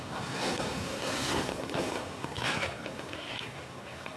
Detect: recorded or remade remade